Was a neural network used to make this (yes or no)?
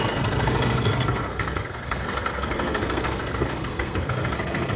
yes